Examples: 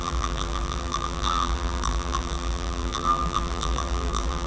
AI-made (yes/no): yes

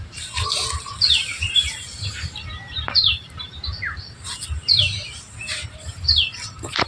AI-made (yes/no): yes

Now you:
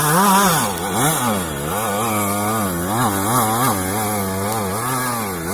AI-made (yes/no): no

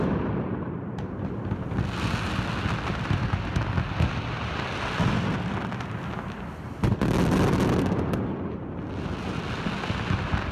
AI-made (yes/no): no